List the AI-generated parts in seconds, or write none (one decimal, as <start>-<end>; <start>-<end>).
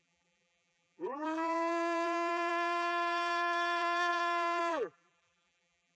0.0-5.9